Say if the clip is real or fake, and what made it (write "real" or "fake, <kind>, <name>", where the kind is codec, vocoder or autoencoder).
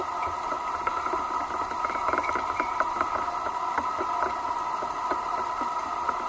real